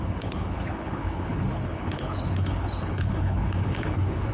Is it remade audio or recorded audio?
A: remade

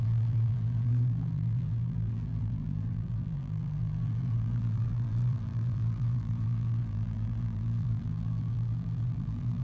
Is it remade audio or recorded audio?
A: remade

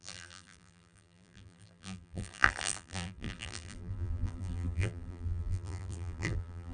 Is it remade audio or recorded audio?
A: remade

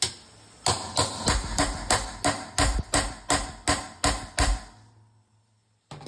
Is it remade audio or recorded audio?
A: recorded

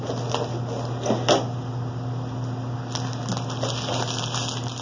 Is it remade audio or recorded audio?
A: recorded